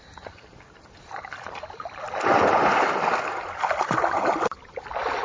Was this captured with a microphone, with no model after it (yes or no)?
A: yes